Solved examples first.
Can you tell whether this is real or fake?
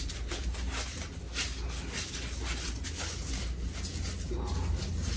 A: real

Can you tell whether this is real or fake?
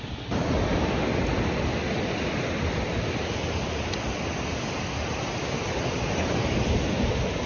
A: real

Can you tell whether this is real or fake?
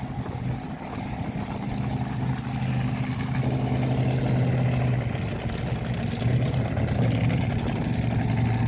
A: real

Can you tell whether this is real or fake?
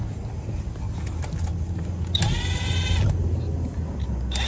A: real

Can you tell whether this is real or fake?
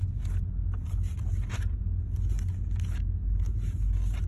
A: real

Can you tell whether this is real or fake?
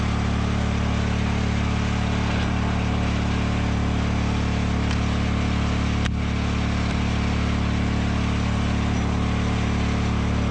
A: real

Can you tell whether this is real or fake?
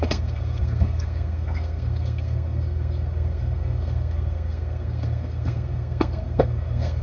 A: fake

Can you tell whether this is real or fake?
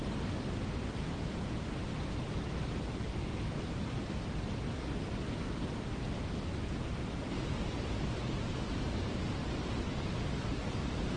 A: real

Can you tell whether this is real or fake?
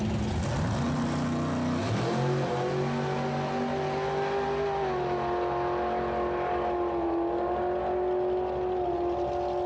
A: real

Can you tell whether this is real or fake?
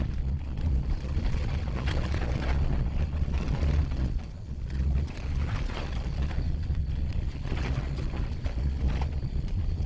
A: fake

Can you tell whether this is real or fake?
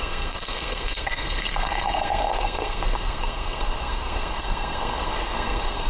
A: fake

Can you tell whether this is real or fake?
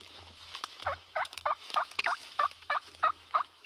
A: fake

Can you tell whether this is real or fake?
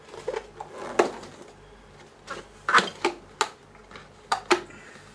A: real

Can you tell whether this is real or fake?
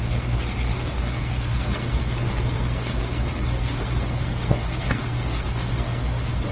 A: fake